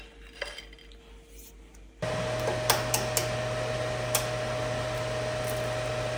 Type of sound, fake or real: real